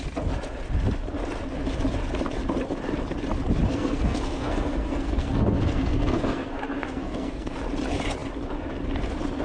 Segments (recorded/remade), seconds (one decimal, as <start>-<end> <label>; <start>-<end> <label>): 0.0-3.7 recorded; 3.7-7.6 remade; 7.6-9.4 recorded